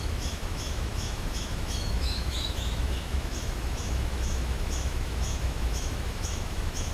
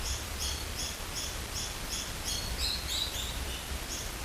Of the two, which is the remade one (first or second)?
first